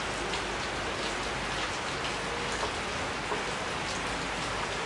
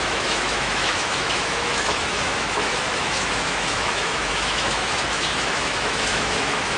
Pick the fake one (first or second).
second